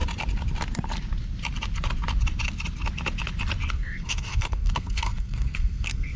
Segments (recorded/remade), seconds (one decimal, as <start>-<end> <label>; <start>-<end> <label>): 0.0-3.7 recorded; 3.7-6.2 remade